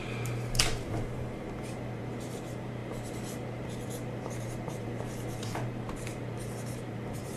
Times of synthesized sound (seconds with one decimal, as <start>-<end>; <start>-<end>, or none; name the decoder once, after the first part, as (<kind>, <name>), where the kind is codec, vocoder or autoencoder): 0.0-7.4 (vocoder, BigVGAN v2)